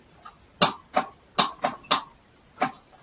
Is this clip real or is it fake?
real